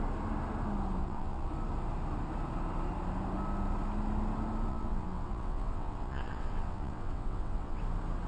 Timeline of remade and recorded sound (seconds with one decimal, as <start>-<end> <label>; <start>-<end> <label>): 0.0-1.0 recorded; 1.0-1.5 remade; 1.5-4.7 recorded; 4.7-7.8 remade; 7.8-8.3 recorded